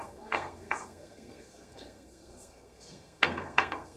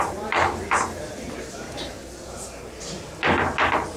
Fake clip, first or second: first